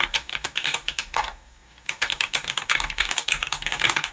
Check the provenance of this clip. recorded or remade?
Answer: remade